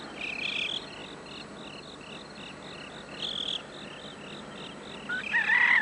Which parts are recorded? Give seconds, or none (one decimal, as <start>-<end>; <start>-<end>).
0.0-5.8

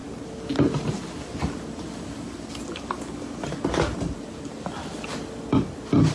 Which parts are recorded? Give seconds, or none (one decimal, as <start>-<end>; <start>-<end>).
0.0-6.1

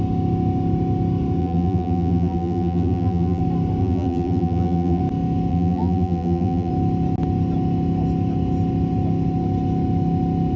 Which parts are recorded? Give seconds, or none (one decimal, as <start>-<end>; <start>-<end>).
0.0-1.4; 3.4-3.8; 5.0-5.5; 6.7-10.6

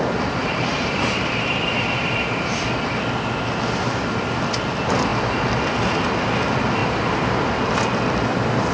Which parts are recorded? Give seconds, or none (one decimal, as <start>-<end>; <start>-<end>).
0.0-0.4; 2.6-8.7